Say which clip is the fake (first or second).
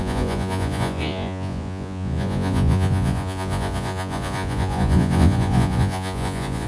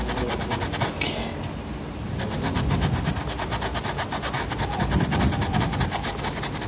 first